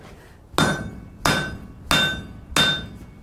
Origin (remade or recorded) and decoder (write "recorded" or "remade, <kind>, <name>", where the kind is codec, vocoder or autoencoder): recorded